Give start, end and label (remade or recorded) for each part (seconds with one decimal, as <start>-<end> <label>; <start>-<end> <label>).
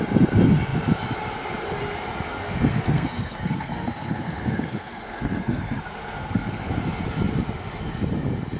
0.0-2.3 recorded; 2.3-5.8 remade; 5.8-6.2 recorded; 6.2-6.7 remade; 6.7-8.6 recorded